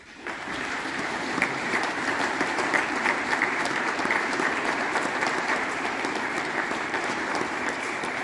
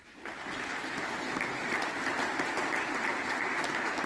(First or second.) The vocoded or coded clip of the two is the first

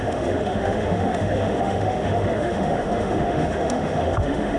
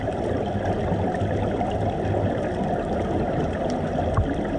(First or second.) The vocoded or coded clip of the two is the first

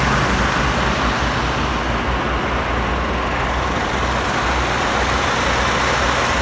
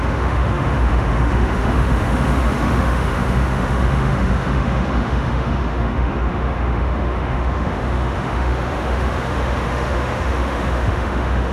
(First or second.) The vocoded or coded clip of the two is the second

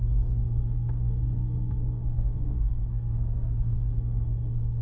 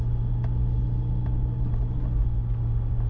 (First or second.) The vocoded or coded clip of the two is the first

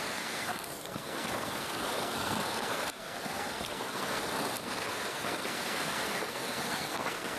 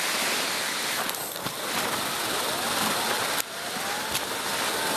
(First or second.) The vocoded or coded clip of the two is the first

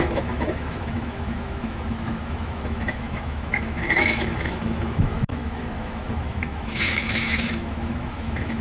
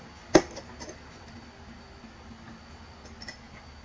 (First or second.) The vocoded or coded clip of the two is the first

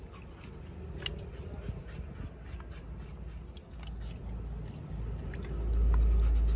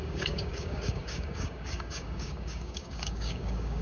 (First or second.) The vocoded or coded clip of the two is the second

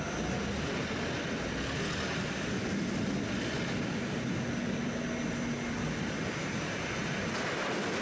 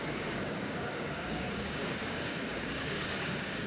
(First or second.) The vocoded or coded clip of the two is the second